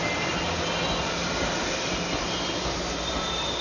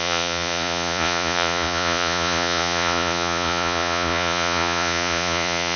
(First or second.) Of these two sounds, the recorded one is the first